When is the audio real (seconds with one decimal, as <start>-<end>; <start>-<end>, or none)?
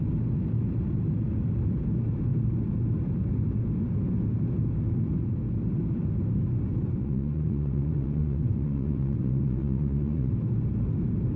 0.0-7.0; 10.3-11.4